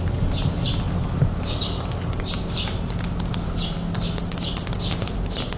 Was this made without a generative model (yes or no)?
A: yes